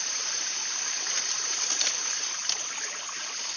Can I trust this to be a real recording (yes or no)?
yes